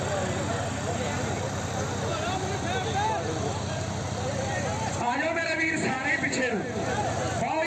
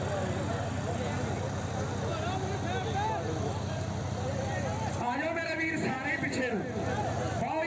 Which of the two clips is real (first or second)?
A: second